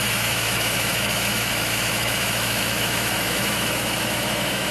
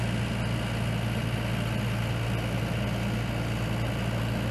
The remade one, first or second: first